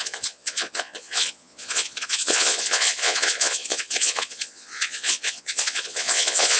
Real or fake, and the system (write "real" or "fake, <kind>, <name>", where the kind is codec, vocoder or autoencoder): fake, vocoder, Vocos